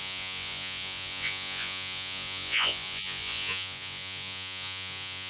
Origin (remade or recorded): remade